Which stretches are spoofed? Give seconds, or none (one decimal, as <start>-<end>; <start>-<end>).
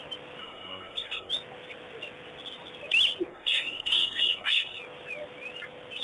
0.4-1.3; 3.3-4.8